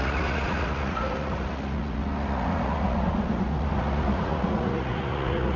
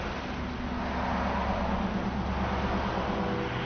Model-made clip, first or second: first